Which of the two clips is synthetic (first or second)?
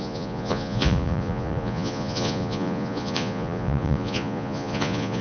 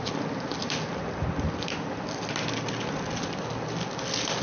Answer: first